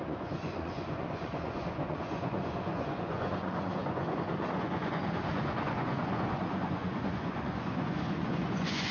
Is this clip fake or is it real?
fake